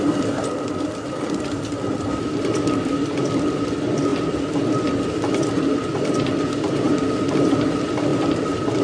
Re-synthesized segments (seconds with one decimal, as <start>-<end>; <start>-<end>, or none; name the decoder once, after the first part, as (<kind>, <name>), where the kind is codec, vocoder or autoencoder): none